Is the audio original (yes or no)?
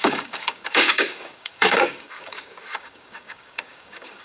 no